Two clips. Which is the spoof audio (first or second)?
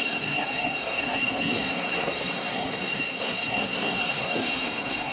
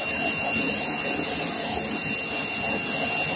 first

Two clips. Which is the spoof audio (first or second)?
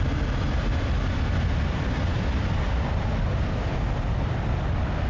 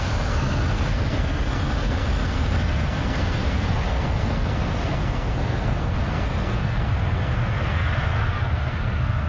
second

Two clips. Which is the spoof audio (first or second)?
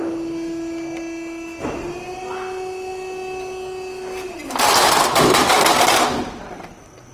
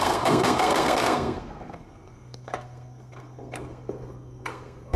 second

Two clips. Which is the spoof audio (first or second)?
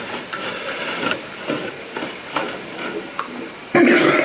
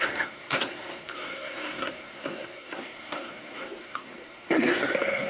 second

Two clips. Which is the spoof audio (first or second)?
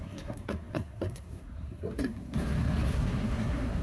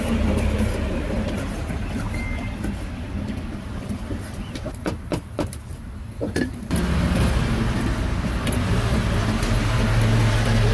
first